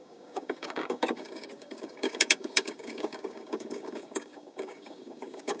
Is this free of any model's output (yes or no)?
no